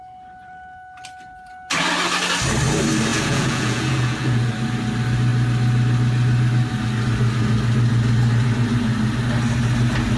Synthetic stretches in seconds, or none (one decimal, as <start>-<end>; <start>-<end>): 3.1-4.5